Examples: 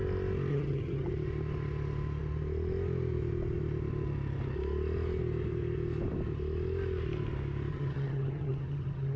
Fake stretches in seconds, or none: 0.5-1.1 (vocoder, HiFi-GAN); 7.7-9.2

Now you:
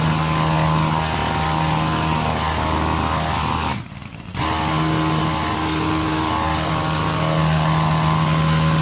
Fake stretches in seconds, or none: none

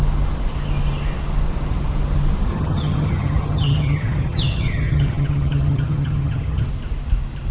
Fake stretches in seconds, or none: 2.5-6.7 (vocoder, HiFi-GAN)

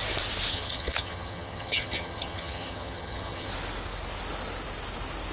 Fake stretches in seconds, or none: 0.5-3.5 (vocoder, HiFi-GAN)

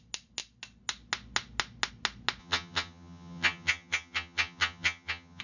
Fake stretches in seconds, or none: 2.4-5.4 (vocoder, HiFi-GAN)

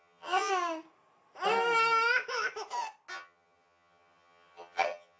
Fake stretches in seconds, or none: 0.0-0.5 (vocoder, HiFi-GAN); 3.1-5.2

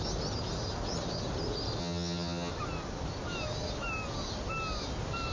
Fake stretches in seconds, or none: 1.8-2.5 (vocoder, HiFi-GAN)

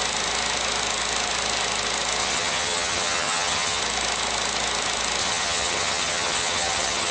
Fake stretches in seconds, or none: 2.2-3.8 (vocoder, HiFi-GAN); 5.2-7.1